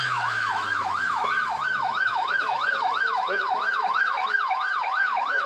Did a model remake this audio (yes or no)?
yes